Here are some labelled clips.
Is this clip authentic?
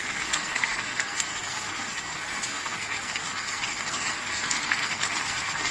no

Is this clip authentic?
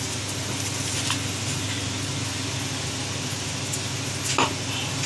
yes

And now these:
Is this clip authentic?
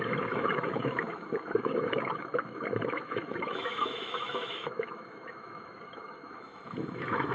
no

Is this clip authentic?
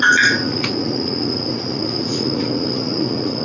no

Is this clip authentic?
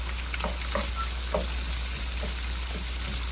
yes